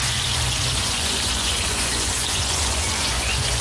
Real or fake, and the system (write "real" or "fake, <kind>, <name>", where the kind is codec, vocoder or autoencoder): fake, vocoder, Vocos